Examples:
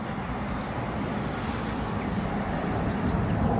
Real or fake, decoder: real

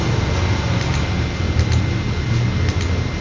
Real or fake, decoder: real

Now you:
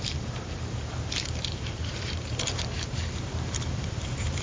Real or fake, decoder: fake, vocoder, BigVGAN v2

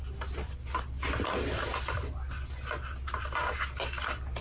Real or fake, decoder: real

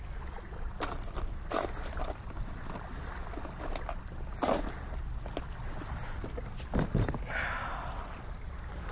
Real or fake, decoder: real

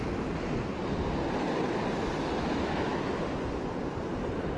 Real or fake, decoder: real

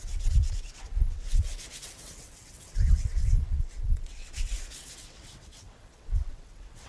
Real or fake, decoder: fake, vocoder, WaveNeXt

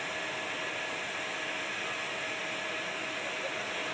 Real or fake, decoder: real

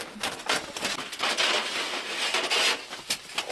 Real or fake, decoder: real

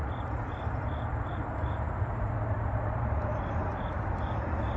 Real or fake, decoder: fake, vocoder, BigVGAN v2